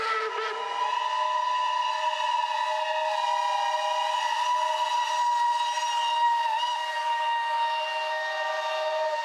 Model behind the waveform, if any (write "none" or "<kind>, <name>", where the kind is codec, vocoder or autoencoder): none